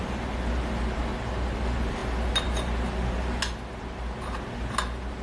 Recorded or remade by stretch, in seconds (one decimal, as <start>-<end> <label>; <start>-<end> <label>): 0.0-5.2 recorded